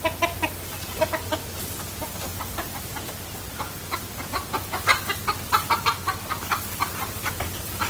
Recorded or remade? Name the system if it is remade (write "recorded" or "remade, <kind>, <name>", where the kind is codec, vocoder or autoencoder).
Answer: recorded